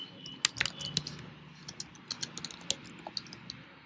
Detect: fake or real real